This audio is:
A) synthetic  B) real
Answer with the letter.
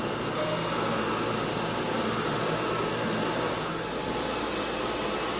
B